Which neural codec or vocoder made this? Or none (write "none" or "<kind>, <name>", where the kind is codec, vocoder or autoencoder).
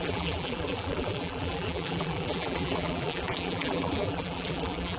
vocoder, BigVGAN v2